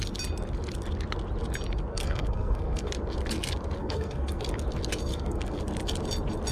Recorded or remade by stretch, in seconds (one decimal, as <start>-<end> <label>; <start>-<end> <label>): 0.0-1.9 recorded; 1.9-2.9 remade; 2.9-3.8 recorded; 3.8-4.4 remade; 4.4-5.1 recorded; 5.1-5.6 remade; 5.6-6.5 recorded